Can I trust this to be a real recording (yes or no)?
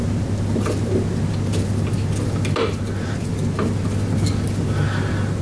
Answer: yes